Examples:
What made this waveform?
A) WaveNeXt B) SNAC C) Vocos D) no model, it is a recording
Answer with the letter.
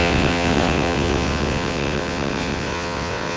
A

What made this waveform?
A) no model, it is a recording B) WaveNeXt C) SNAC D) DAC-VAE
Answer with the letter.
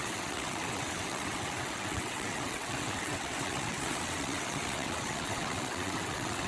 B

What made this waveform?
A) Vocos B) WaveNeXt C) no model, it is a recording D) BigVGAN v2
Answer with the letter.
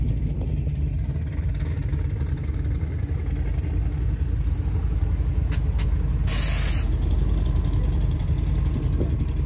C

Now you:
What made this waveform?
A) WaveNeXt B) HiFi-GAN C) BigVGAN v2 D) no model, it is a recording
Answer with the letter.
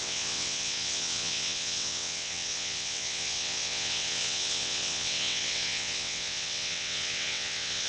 A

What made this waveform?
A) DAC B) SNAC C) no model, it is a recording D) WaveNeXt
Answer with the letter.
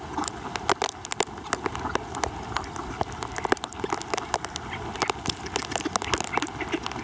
C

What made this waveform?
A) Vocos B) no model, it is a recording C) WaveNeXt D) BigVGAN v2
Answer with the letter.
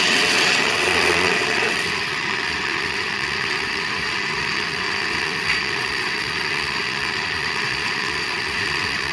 C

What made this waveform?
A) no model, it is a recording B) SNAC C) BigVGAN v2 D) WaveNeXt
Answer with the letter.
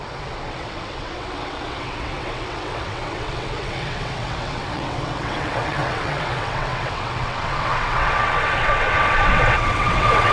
D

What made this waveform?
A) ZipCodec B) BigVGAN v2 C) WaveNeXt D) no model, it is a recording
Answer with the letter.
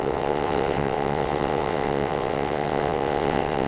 C